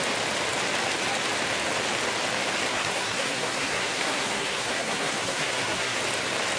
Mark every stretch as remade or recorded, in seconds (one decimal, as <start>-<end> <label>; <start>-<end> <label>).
0.0-2.7 recorded; 2.7-6.0 remade; 6.0-6.6 recorded